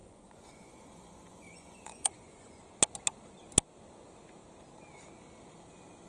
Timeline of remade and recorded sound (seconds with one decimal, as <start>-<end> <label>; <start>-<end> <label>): 0.0-2.6 remade; 2.6-6.1 recorded